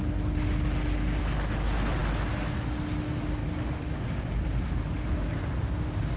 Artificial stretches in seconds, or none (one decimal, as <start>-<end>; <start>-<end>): none